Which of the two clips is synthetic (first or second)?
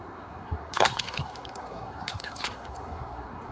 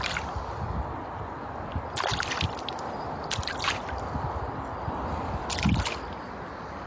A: first